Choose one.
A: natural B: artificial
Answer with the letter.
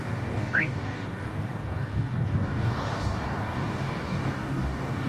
B